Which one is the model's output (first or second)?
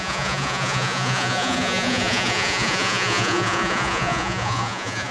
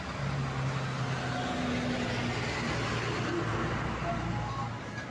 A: first